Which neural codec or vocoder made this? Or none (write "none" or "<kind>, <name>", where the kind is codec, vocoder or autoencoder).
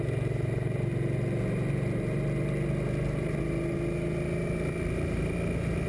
none